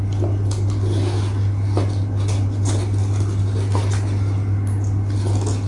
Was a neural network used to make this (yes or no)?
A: no